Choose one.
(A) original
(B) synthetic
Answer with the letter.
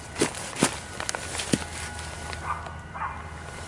A